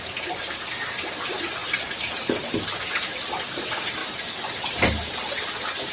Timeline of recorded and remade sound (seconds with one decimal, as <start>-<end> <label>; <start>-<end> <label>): 0.0-5.9 recorded